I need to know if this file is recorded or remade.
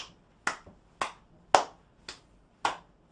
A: recorded